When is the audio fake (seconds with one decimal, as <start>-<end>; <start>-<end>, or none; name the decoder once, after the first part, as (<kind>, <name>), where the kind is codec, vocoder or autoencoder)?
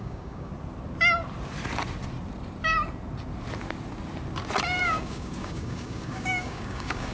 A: 0.0-0.5 (codec, DAC); 4.8-7.1